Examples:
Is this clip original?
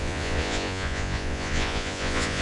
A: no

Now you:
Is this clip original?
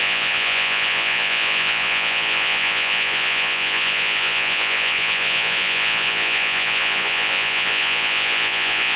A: no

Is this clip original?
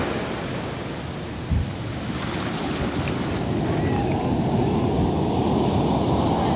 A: yes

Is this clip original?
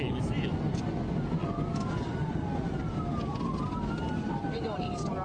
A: yes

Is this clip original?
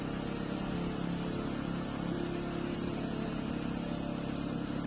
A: yes